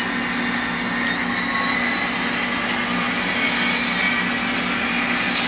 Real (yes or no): yes